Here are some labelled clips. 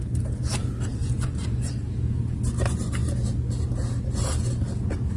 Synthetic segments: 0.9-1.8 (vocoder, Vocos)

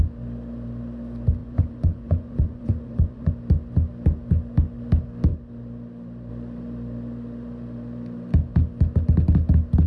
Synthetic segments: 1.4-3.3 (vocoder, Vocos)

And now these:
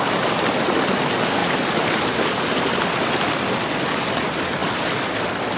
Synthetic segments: none